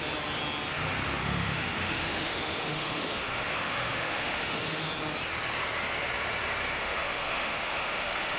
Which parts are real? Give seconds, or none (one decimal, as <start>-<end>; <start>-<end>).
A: 0.0-1.2; 4.9-6.8